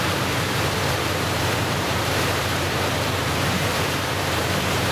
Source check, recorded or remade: remade